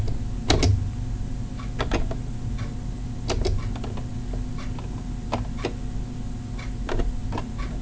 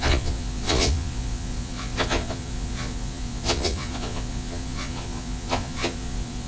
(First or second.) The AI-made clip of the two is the second